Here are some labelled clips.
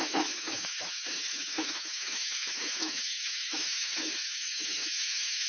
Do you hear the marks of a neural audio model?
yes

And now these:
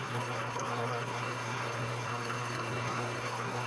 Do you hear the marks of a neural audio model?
yes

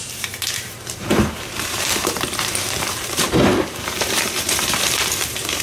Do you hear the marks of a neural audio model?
yes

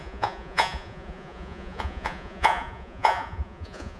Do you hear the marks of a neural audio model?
yes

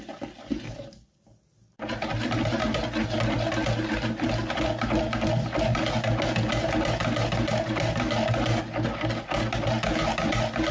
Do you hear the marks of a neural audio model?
no